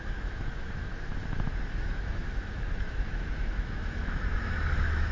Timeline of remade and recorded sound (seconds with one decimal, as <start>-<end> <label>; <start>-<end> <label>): 0.0-5.1 remade

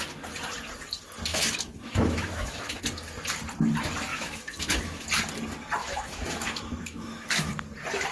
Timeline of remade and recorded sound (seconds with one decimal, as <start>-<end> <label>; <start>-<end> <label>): 0.0-1.3 recorded; 1.3-2.8 remade; 2.8-4.1 recorded; 4.1-5.1 remade; 5.1-5.8 recorded; 5.8-7.5 remade; 7.5-8.1 recorded

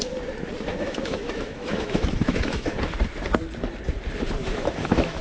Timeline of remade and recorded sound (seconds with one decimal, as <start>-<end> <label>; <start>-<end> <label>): 0.0-0.7 recorded; 0.7-2.8 remade; 2.8-4.4 recorded; 4.4-5.2 remade

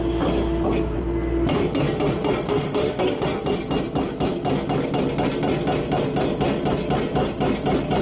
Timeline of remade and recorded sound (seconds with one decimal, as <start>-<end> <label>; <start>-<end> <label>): 0.0-2.5 recorded; 2.5-3.2 remade; 3.2-8.0 recorded

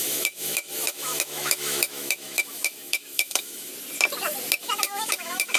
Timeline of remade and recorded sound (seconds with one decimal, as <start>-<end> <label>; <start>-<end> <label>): 0.0-3.7 remade; 3.7-4.6 recorded; 4.6-5.6 remade

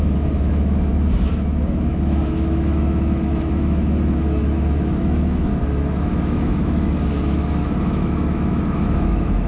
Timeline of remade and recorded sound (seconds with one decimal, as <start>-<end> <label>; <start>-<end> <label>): 0.0-9.5 remade

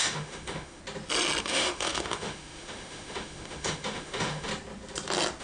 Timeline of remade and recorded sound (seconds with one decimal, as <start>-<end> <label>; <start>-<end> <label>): 0.0-0.8 remade; 0.8-1.4 recorded; 1.4-4.5 remade; 4.5-5.4 recorded

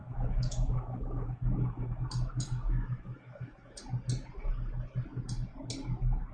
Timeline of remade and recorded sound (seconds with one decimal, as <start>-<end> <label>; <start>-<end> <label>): 0.0-3.8 remade; 3.8-6.3 recorded